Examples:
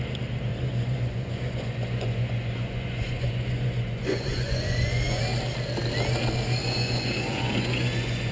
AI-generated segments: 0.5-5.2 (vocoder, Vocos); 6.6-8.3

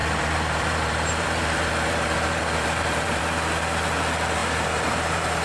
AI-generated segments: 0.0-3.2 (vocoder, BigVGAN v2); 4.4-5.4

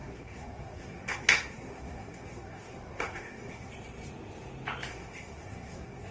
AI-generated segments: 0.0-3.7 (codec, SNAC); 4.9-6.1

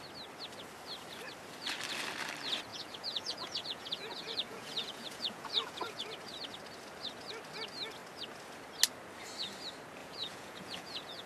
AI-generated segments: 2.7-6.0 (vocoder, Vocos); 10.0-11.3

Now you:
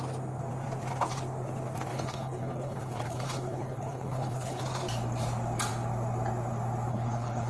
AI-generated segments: 1.9-4.6 (codec, HILCodec); 6.9-7.5